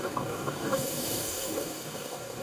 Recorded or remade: remade